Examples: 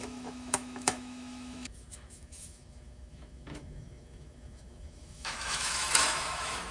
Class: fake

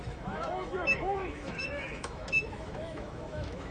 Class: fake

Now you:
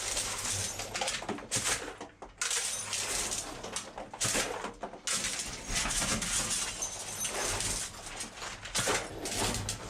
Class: real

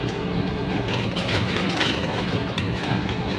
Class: fake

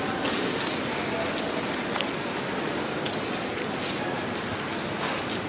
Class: real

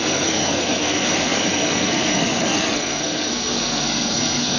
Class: fake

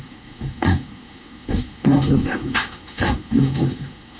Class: fake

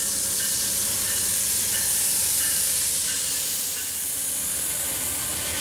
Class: fake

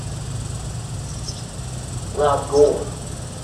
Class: real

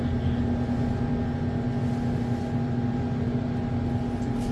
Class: real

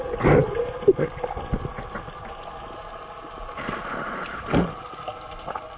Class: real